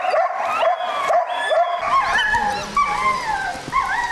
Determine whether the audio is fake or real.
real